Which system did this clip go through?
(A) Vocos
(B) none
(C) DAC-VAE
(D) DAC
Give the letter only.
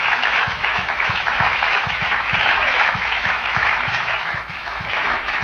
C